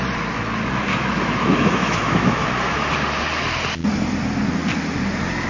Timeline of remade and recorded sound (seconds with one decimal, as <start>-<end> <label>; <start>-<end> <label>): 0.0-0.9 recorded; 0.9-2.9 remade; 2.9-5.5 recorded